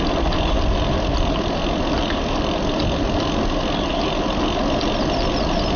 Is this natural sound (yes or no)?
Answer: yes